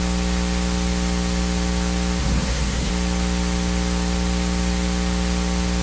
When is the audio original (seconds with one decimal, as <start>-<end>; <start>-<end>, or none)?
0.0-2.2; 2.9-5.8